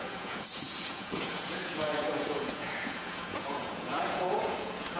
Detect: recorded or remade remade